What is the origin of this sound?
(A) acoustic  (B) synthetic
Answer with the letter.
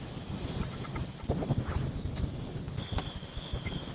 A